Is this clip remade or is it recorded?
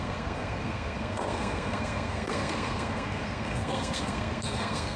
remade